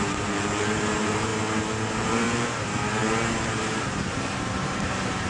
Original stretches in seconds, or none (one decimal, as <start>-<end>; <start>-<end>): 1.3-2.0